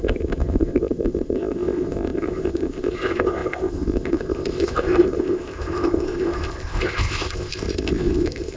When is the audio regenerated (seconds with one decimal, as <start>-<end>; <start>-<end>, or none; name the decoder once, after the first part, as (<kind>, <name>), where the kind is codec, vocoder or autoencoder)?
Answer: 0.0-8.6 (codec, ZipCodec)